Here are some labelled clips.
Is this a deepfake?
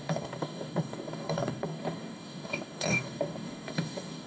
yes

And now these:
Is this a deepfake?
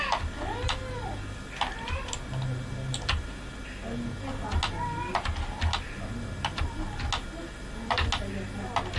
no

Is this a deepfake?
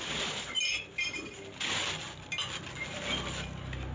no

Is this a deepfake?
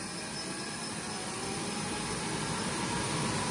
no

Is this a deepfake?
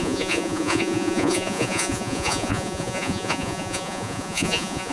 yes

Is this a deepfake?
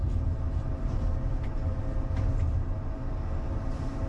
yes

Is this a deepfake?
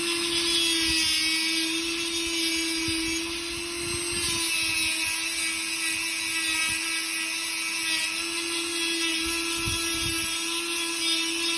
no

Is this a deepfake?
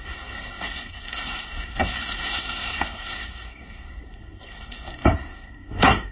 yes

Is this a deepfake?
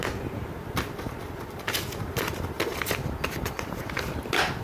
no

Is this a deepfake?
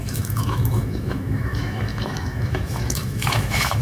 yes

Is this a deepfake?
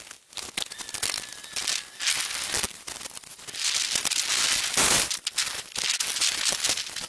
no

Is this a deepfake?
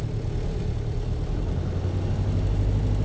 no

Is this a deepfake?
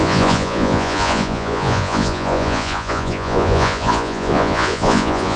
yes